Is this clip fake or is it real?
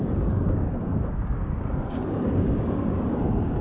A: fake